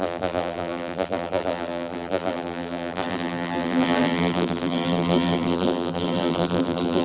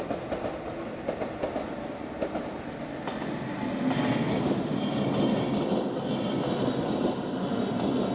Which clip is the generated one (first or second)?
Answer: first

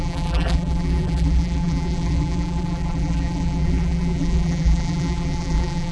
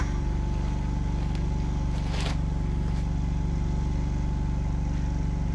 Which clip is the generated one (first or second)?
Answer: first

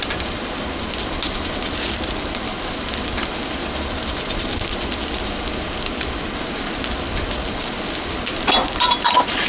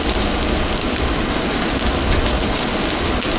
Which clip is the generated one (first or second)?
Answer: first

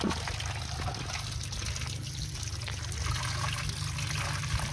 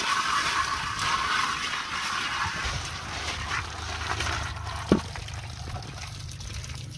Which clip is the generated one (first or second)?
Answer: second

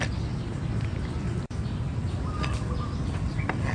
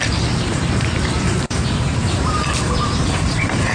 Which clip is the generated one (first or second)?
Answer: second